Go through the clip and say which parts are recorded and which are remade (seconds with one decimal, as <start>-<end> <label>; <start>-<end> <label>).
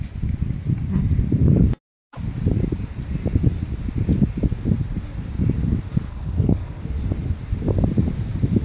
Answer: 0.0-6.1 recorded; 6.1-6.8 remade; 6.8-8.6 recorded